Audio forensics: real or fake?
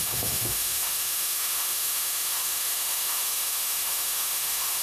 fake